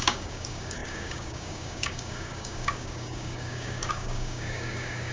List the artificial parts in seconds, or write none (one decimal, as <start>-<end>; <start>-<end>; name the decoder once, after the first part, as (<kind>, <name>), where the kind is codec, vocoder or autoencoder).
0.0-5.1 (codec, DAC)